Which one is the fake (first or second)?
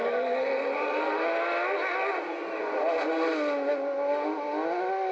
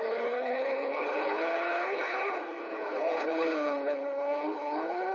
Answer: second